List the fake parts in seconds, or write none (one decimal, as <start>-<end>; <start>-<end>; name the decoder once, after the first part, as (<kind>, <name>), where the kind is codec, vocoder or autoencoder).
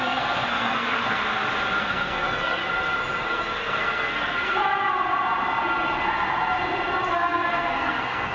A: 0.0-1.2 (codec, SNAC); 1.8-2.6; 3.2-4.6; 7.1-8.3